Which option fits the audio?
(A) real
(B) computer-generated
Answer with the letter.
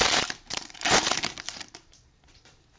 B